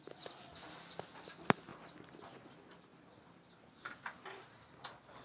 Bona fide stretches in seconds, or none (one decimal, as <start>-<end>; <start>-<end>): 0.0-5.2

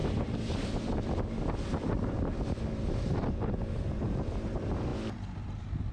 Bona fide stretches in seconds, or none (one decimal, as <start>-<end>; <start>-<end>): 0.0-5.9

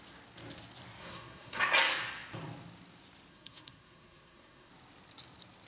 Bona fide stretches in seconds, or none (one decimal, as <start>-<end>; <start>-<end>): 0.0-1.0; 1.6-3.3; 4.7-5.7

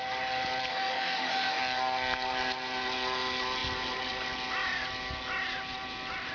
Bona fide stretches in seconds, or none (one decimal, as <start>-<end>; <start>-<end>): 0.0-0.7; 1.6-6.3

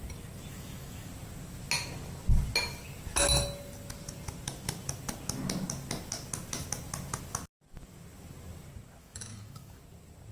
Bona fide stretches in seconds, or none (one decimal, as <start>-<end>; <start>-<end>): 0.0-0.5; 1.1-9.0; 9.8-10.3